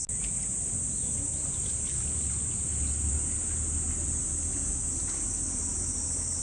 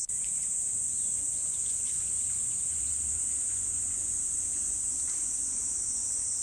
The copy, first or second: second